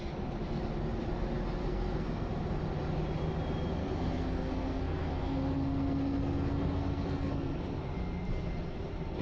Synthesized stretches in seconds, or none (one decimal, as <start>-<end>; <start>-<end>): 1.6-2.3; 3.8-7.6